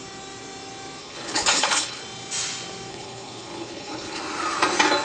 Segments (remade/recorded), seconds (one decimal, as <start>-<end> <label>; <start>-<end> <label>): 0.0-1.0 recorded; 1.0-2.0 remade; 2.0-2.9 recorded; 2.9-4.2 remade; 4.2-5.0 recorded